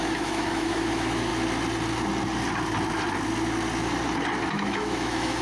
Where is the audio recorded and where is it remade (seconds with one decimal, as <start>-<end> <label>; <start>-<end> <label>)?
0.0-1.3 remade; 1.3-4.5 recorded; 4.5-5.4 remade